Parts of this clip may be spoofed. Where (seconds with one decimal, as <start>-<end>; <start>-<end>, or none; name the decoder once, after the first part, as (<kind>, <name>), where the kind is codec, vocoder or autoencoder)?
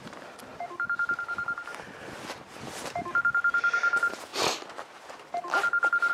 none